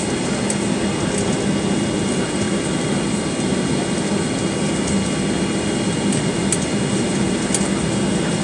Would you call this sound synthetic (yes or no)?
no